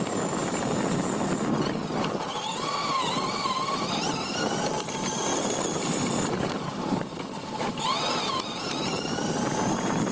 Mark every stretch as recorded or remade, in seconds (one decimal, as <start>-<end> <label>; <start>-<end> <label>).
0.0-0.4 remade; 0.4-3.0 recorded; 3.0-5.3 remade; 5.3-6.4 recorded; 6.4-10.1 remade